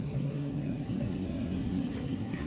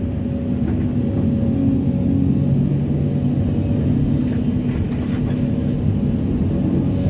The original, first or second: second